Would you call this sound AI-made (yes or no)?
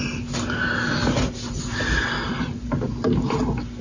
no